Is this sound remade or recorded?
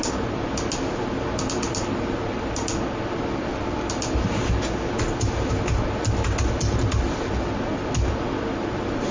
recorded